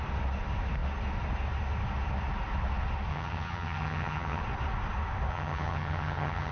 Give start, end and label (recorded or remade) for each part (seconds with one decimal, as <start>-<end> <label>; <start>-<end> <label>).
0.0-3.1 recorded; 3.1-4.4 remade; 4.4-5.3 recorded; 5.3-6.5 remade